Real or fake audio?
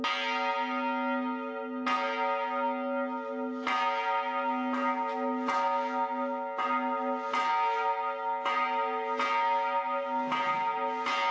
real